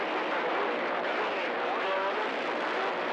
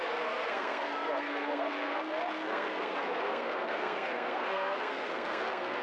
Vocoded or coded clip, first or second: second